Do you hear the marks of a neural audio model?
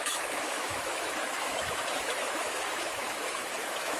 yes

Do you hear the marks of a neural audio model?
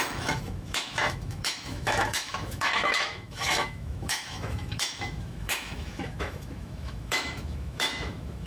yes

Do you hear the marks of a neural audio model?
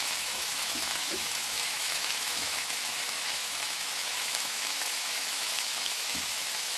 yes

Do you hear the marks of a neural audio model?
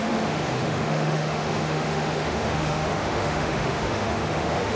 yes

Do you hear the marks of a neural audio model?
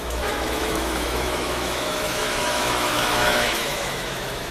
yes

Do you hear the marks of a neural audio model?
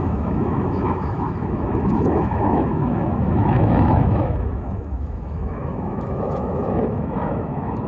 yes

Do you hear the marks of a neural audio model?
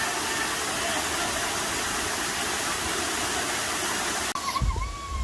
no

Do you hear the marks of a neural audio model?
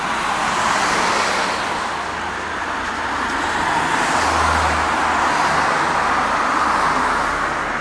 no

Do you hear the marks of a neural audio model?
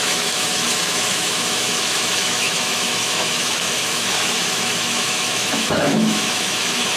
yes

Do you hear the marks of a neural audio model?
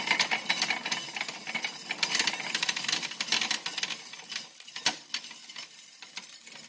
no